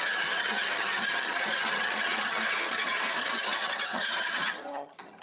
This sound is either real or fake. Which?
fake